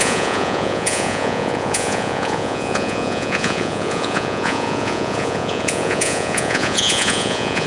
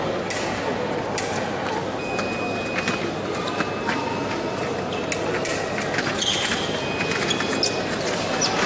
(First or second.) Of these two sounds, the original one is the second